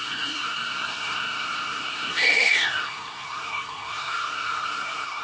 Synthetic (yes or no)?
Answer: yes